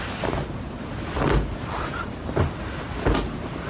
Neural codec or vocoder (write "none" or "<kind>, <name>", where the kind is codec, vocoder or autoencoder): none